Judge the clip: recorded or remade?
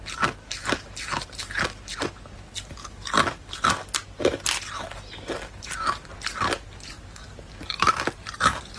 recorded